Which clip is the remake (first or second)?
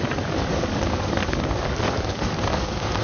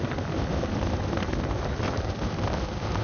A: first